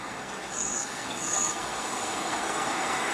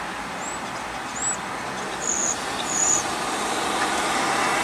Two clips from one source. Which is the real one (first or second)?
second